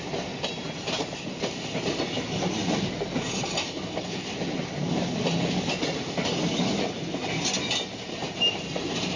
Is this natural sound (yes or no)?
yes